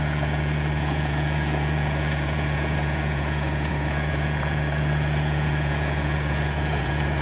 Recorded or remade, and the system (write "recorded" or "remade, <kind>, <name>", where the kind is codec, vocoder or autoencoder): remade, vocoder, Vocos